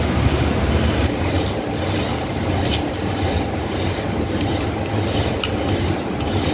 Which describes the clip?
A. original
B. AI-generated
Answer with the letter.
B